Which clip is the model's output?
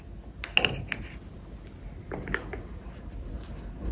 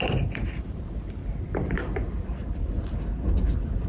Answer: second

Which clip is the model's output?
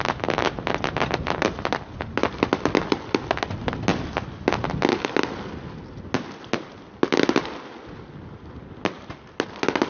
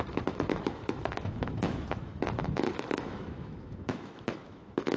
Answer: second